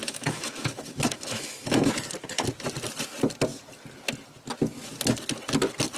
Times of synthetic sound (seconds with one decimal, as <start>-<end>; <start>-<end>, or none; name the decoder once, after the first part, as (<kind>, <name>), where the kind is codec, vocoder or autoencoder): 0.0-1.9 (autoencoder, DAC-VAE)